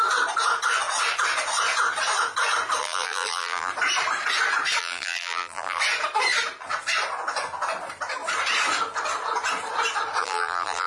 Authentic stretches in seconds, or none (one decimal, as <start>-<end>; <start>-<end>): 0.0-2.8; 3.7-4.8; 5.8-10.2